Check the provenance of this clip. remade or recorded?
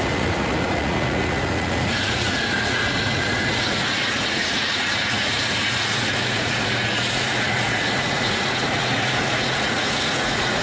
remade